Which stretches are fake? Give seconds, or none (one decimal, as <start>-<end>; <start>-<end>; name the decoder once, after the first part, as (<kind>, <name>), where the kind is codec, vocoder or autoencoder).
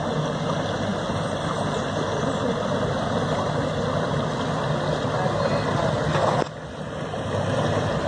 none